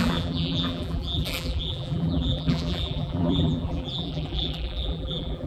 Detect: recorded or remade remade